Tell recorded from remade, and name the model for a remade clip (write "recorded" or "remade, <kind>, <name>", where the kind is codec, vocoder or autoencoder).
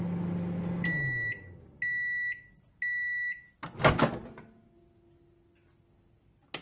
recorded